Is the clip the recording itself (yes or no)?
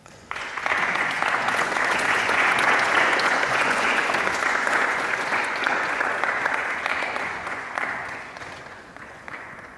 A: no